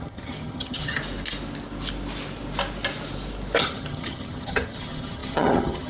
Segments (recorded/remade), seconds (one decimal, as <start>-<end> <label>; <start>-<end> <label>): 0.0-1.0 remade; 1.0-3.6 recorded; 3.6-5.9 remade